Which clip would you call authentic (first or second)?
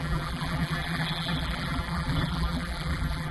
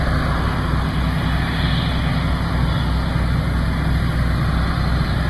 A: second